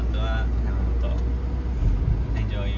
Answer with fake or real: real